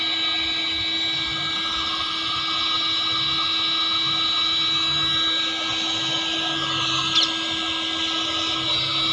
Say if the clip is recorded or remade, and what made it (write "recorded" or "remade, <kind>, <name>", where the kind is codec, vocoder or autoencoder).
recorded